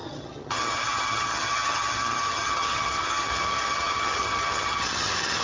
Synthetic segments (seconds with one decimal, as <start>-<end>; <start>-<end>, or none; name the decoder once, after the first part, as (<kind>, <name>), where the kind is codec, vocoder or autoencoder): 0.0-5.4 (vocoder, HiFi-GAN)